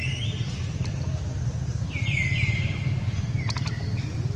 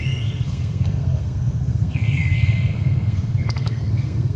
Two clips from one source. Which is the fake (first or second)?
second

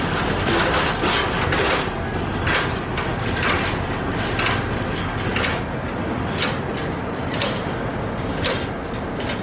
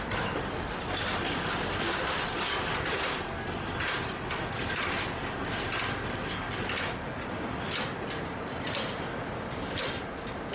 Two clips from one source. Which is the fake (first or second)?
second